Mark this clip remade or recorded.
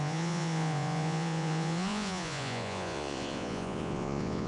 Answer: remade